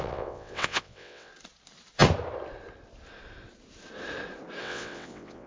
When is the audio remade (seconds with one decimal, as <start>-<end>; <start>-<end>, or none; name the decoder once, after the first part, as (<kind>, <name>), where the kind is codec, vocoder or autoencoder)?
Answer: 0.0-1.3 (vocoder, WaveNeXt); 4.6-5.5